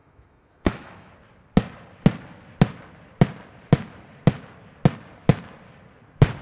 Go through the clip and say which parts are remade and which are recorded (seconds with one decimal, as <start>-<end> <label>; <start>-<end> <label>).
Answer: 0.0-1.1 remade; 1.1-6.4 recorded